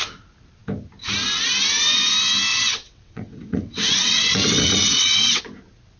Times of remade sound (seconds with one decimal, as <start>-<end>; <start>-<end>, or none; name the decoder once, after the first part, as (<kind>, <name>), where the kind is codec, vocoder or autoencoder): 2.5-5.4 (vocoder, WaveNeXt)